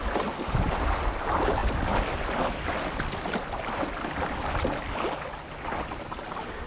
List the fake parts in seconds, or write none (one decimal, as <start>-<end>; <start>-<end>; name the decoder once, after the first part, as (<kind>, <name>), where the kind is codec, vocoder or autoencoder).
none